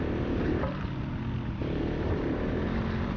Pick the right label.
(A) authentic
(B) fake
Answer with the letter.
A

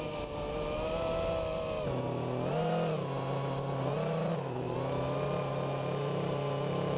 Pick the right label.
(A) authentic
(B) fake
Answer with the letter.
A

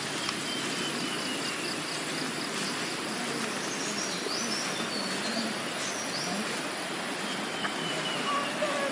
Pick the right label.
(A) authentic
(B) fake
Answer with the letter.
A